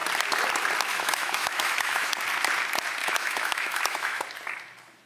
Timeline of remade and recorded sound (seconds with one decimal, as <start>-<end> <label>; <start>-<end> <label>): 0.0-0.9 recorded; 0.9-2.1 remade; 2.1-3.0 recorded; 3.0-4.2 remade; 4.2-5.1 recorded